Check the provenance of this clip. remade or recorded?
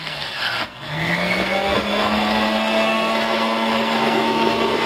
remade